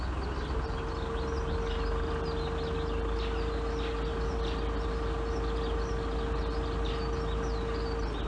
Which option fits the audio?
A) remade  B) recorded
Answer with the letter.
B